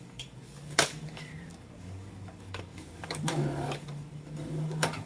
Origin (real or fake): fake